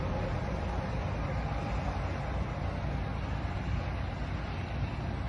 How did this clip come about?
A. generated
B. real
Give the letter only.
B